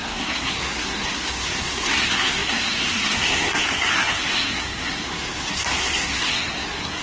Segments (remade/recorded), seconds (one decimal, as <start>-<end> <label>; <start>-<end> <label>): 0.0-7.0 remade